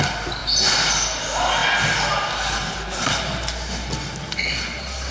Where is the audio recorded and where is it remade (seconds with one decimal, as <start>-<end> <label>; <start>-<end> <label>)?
0.0-5.1 recorded